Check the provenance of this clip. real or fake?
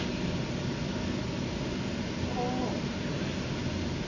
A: real